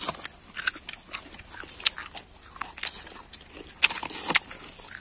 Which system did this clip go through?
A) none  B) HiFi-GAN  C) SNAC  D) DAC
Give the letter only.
A